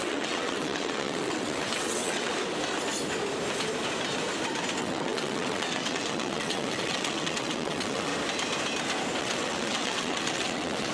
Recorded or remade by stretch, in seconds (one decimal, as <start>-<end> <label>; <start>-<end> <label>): 0.0-2.3 remade; 2.3-4.8 recorded; 4.8-8.1 remade; 8.1-9.2 recorded; 9.2-10.9 remade